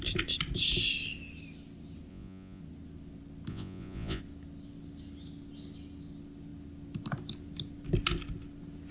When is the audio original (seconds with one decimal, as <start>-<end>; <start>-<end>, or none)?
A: 0.0-2.1; 2.6-3.5; 4.2-8.9